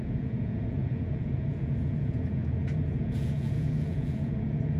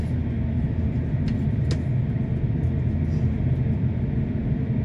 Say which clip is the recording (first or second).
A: second